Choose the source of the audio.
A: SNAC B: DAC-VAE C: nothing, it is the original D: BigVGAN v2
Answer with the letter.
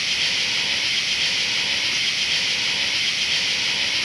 C